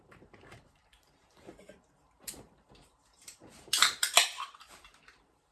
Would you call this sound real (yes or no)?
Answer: no